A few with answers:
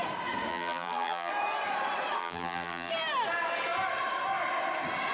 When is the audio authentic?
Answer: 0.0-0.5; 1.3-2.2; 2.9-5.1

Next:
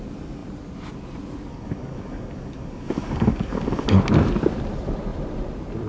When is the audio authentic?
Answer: 0.0-1.5; 4.0-5.9

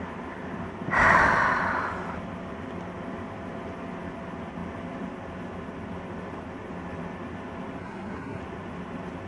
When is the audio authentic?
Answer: 0.0-7.8; 8.4-9.3

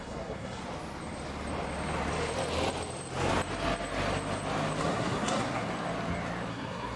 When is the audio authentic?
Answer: 0.6-4.8; 5.7-6.5

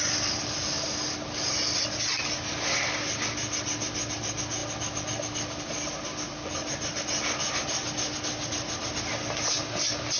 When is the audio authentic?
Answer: 0.0-10.2